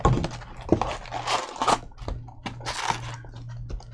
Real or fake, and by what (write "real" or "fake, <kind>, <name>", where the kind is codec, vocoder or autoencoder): real